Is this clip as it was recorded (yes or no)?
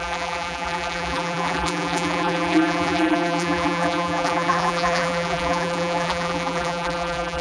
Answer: no